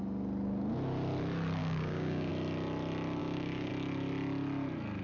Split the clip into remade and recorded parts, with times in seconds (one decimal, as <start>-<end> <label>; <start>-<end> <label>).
0.0-1.6 recorded; 1.6-2.3 remade; 2.3-3.2 recorded; 3.2-3.7 remade; 3.7-5.0 recorded